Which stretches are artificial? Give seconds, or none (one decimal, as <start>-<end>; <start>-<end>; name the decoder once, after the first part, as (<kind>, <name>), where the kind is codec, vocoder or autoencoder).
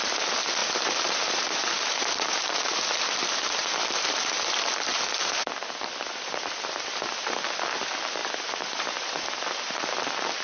0.0-0.6 (vocoder, BigVGAN v2); 1.5-8.2; 8.9-10.4